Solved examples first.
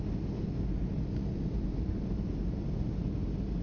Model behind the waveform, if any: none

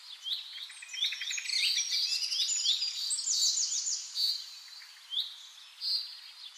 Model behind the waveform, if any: none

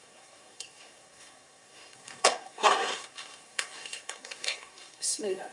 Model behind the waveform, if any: codec, SNAC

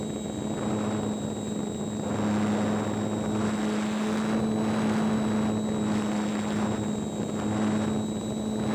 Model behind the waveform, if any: none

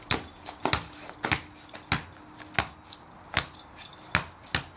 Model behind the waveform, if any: none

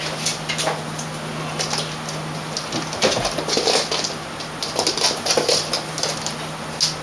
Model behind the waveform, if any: none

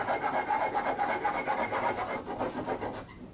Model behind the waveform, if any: none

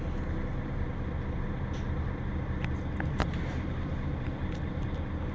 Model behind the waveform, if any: none